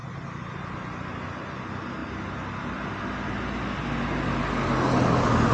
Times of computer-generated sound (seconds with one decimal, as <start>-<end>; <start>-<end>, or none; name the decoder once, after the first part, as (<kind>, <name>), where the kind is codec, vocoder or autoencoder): none